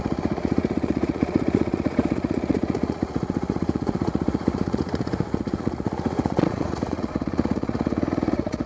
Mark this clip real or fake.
fake